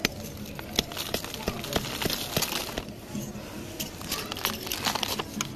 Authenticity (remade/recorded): recorded